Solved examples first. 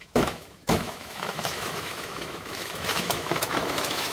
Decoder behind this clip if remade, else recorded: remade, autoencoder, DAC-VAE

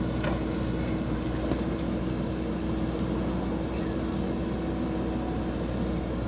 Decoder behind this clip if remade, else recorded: recorded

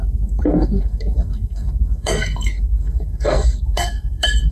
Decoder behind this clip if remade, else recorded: remade, codec, SNAC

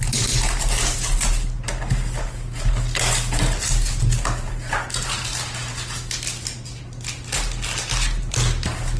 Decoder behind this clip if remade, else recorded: recorded